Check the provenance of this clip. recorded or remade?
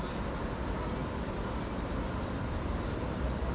recorded